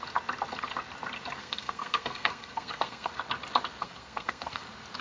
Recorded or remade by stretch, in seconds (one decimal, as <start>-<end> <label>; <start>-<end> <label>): 0.0-1.4 recorded; 1.4-3.1 remade; 3.1-3.8 recorded; 3.8-4.6 remade; 4.6-5.0 recorded